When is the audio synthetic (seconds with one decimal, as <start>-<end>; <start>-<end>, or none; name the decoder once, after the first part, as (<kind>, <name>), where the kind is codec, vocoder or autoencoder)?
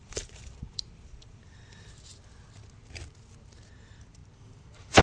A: 0.0-2.1 (vocoder, BigVGAN v2); 3.8-4.2